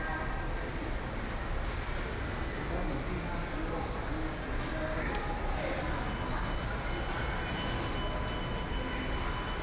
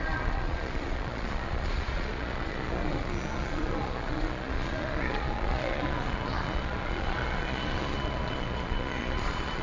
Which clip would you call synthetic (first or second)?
second